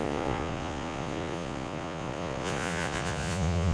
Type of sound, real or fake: fake